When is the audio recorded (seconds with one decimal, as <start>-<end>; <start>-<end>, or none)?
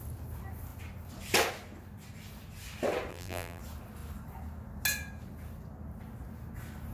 0.0-3.1; 3.6-6.9